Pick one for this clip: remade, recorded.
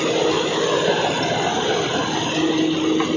recorded